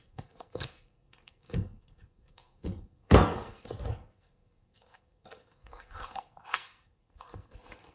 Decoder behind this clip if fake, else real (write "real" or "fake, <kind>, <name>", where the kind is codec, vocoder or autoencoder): fake, codec, SNAC